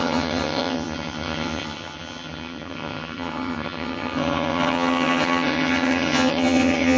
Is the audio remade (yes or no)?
yes